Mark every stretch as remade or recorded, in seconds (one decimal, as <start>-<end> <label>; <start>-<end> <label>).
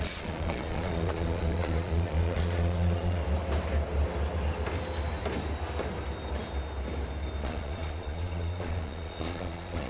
0.0-3.2 remade; 3.2-7.4 recorded; 7.4-9.9 remade